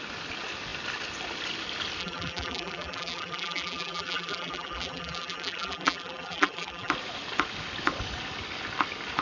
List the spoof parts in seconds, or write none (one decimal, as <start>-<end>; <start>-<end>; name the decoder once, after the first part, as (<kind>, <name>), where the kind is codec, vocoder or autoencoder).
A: 2.0-6.9 (vocoder, BigVGAN v2)